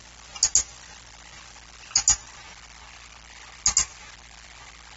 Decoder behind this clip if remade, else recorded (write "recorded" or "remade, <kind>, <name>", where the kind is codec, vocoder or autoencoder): recorded